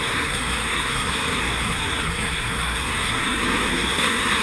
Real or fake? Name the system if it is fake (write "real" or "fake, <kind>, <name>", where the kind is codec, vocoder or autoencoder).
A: fake, codec, SNAC